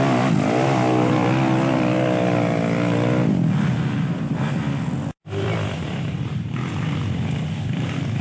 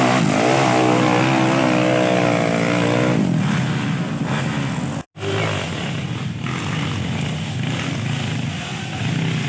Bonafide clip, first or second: second